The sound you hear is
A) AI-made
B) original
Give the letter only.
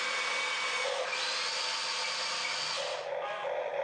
B